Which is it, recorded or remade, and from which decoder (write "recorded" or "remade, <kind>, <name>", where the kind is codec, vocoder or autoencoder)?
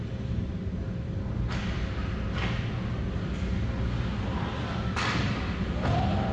recorded